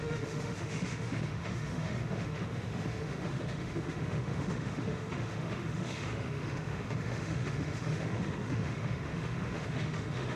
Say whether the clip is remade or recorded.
remade